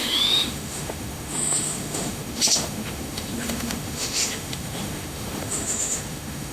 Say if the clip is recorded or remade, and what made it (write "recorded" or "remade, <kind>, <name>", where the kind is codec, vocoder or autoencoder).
remade, autoencoder, DAC-VAE